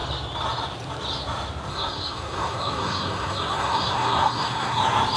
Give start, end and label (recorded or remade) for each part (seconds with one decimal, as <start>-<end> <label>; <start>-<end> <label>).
0.0-1.7 recorded; 1.7-4.8 remade; 4.8-5.2 recorded